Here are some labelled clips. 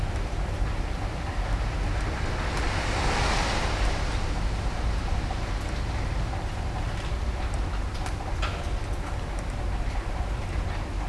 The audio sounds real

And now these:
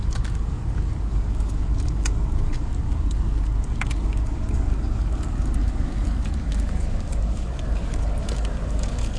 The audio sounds fake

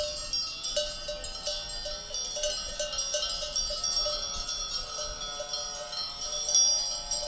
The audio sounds real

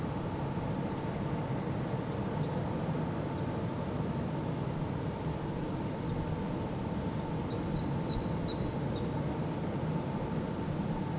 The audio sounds real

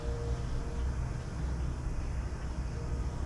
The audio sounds real